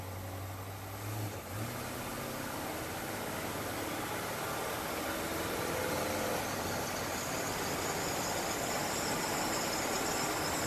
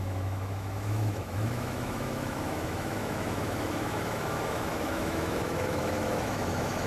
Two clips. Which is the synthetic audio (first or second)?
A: second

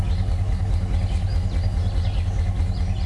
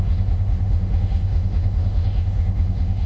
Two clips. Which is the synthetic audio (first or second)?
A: second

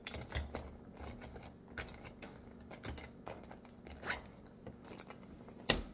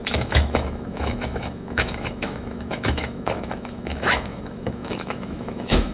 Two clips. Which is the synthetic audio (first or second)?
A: second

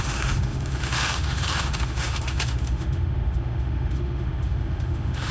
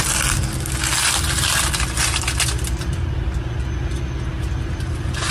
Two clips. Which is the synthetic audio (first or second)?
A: first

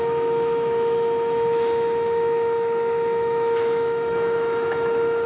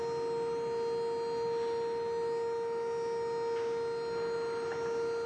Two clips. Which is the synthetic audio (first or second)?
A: first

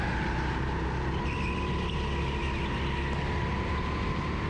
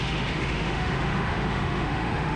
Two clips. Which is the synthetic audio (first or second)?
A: second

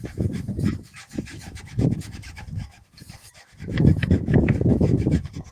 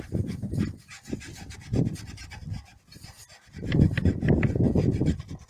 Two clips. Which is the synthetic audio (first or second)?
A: first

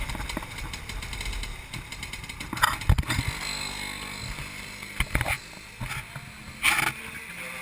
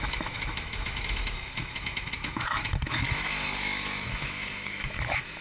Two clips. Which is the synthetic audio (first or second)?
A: second